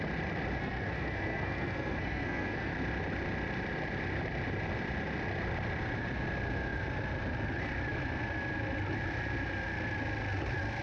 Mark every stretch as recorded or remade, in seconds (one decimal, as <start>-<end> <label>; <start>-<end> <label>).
0.0-0.6 recorded; 0.6-2.7 remade; 2.7-10.8 recorded